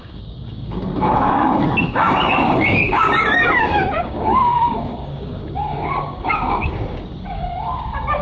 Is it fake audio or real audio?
fake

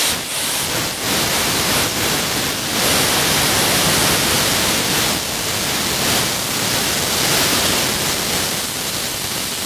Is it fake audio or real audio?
real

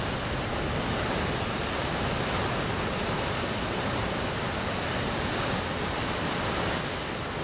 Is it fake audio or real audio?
real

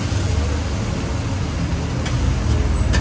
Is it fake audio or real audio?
real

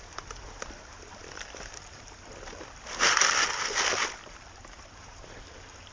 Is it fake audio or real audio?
real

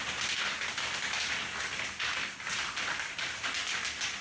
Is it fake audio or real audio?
real